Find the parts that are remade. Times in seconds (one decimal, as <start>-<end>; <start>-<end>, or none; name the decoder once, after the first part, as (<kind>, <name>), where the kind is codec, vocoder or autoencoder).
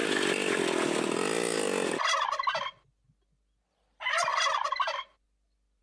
none